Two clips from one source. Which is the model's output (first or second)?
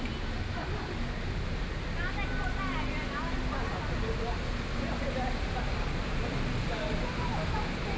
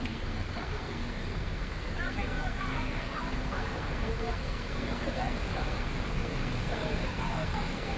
second